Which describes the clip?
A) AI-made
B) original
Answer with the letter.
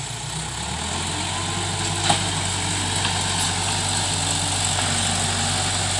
B